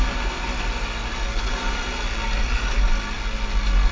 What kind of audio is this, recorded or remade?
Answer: recorded